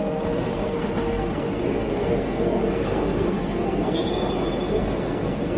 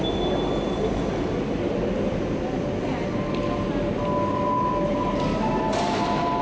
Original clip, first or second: second